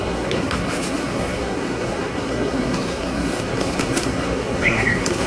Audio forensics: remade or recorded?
remade